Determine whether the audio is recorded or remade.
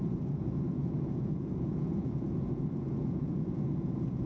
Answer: remade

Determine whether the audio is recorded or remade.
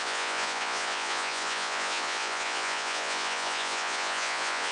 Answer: remade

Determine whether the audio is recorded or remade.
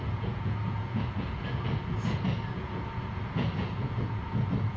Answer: remade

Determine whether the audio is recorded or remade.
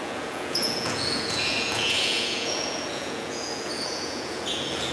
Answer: remade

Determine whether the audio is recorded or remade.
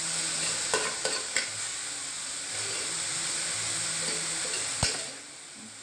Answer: recorded